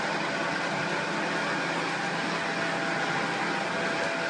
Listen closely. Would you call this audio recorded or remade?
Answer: recorded